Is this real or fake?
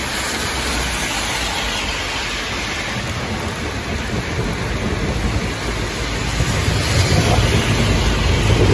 real